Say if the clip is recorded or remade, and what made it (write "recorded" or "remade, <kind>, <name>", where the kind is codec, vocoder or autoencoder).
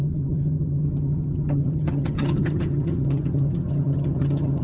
remade, vocoder, HiFi-GAN